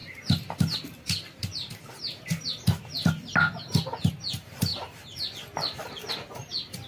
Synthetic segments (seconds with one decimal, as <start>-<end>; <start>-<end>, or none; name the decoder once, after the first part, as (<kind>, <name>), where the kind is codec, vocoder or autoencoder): none